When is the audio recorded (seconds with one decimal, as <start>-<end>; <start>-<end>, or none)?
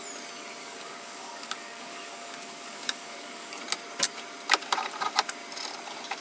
0.0-0.6; 3.6-6.2